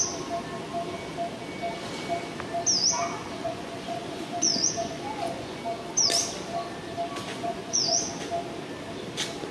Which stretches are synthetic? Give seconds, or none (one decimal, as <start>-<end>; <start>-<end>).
3.2-5.6; 7.3-8.1